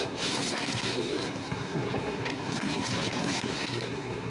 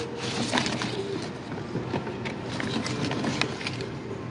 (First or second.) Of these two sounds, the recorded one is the second